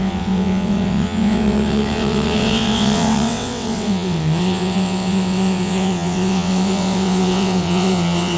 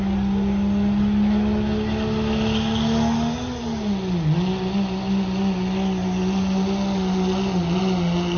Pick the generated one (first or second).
first